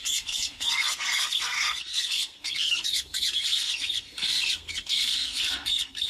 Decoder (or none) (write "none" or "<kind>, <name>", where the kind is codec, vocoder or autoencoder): codec, SNAC